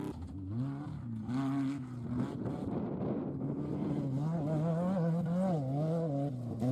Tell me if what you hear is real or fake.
real